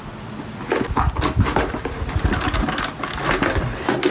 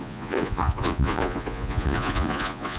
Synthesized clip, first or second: second